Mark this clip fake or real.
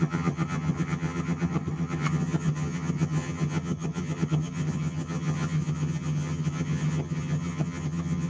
fake